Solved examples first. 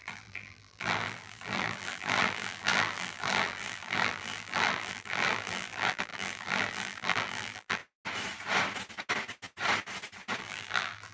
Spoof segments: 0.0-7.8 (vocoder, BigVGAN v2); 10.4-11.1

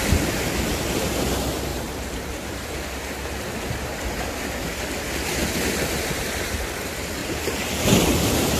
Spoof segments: 1.7-2.7 (vocoder, BigVGAN v2); 7.2-7.7

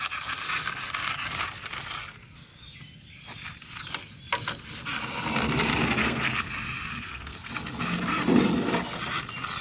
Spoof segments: 6.0-6.5 (codec, SNAC); 6.9-7.5

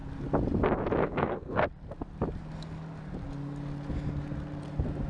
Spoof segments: 1.0-1.6 (codec, SNAC)

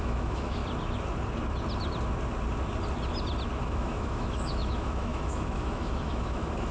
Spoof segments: 0.0-0.6 (autoencoder, DAC-VAE); 3.6-6.7

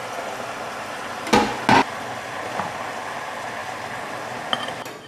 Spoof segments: none

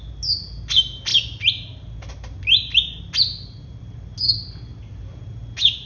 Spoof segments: none